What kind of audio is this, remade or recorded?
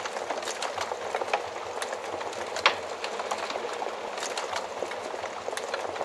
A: recorded